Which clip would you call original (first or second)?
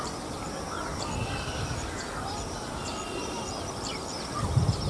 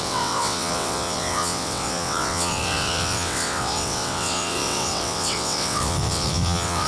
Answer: first